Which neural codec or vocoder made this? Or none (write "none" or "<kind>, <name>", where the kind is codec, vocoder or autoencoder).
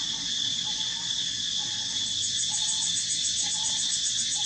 none